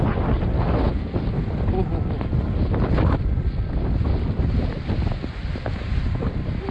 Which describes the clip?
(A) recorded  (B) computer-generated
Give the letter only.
A